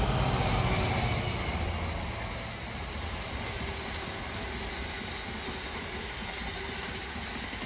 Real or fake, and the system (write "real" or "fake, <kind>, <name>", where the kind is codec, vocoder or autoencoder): real